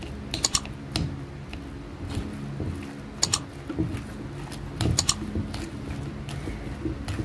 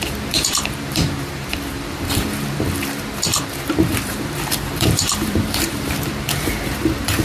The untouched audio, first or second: first